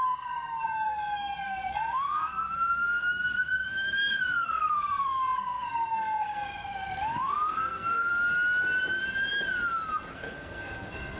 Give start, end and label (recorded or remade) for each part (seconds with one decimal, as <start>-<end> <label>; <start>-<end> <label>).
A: 0.0-8.1 remade; 8.1-10.1 recorded; 10.1-11.2 remade